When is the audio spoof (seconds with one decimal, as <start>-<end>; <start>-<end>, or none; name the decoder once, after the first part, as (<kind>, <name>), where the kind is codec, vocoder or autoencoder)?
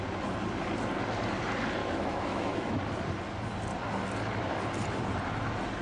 1.8-2.8 (autoencoder, DAC-VAE)